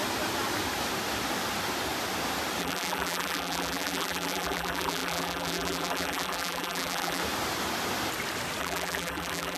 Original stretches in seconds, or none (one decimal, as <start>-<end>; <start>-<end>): 0.0-2.6; 7.2-8.6